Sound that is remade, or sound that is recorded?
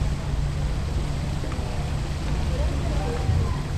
recorded